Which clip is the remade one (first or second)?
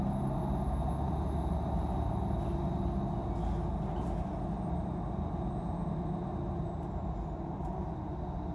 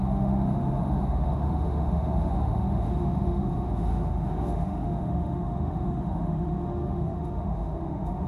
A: second